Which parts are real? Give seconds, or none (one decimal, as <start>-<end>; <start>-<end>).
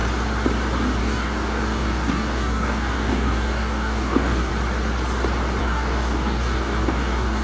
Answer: 0.0-1.0; 4.5-5.6